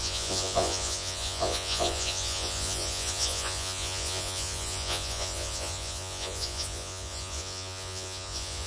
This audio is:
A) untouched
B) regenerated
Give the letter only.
B